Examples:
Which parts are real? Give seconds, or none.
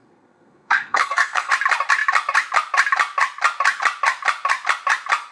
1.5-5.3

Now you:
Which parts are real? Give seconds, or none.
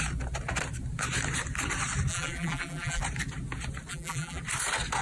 0.0-2.1; 3.0-3.9; 4.4-5.0